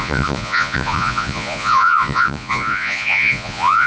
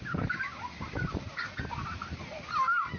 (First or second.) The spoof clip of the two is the first